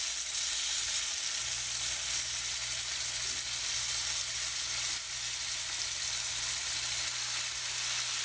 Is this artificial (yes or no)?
no